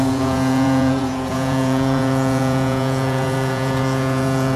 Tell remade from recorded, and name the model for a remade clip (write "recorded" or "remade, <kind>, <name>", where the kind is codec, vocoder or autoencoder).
remade, vocoder, Vocos